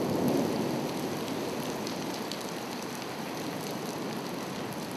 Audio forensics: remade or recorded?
recorded